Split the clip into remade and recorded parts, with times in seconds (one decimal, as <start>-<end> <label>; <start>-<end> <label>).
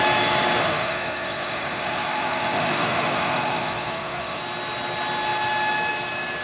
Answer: 0.0-0.6 recorded; 0.6-4.4 remade; 4.4-6.4 recorded